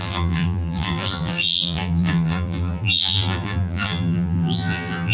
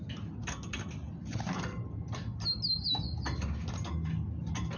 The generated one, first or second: first